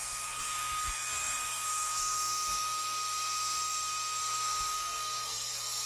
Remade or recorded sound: remade